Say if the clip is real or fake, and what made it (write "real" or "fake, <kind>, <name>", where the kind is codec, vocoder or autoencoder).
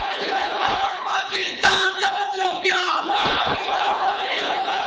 fake, codec, HILCodec